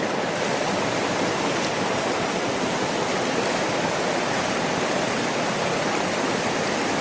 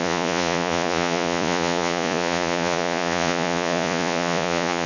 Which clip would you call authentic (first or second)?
first